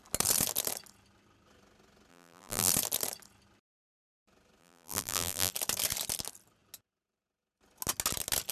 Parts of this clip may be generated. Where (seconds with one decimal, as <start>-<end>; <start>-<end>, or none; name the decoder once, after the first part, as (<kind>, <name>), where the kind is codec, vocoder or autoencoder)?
2.1-2.7 (vocoder, BigVGAN v2); 4.6-5.5